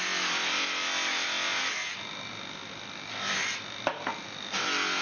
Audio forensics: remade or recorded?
recorded